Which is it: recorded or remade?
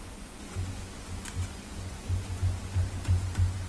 remade